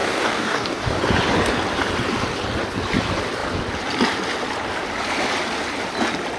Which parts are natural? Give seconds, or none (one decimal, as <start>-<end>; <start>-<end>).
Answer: 1.0-6.4